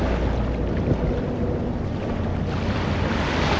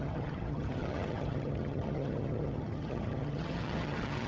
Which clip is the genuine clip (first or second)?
first